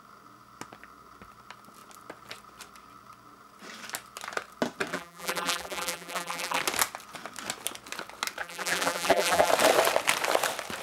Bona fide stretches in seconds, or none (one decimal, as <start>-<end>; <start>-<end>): 0.0-4.9; 6.6-8.4; 9.5-10.8